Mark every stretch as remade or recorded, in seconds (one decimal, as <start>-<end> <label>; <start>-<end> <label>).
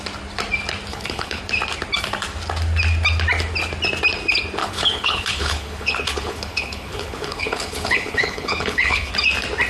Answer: 0.0-0.9 recorded; 0.9-1.4 remade; 1.4-4.6 recorded; 4.6-9.1 remade; 9.1-9.7 recorded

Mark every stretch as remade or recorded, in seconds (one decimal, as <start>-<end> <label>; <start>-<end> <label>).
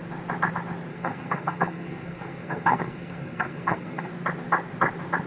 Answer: 0.0-0.9 recorded; 0.9-4.1 remade; 4.1-5.3 recorded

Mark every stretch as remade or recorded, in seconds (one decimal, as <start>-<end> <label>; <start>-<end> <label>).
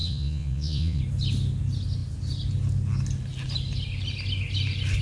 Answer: 0.0-1.0 remade; 1.0-5.0 recorded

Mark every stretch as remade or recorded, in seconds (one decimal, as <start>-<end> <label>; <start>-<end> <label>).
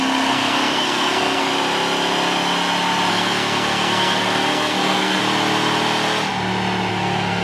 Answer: 0.0-1.5 remade; 1.5-3.1 recorded; 3.1-5.2 remade; 5.2-6.9 recorded; 6.9-7.4 remade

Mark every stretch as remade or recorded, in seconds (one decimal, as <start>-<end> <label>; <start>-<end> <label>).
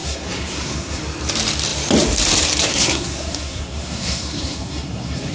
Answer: 0.0-1.0 remade; 1.0-2.7 recorded; 2.7-5.3 remade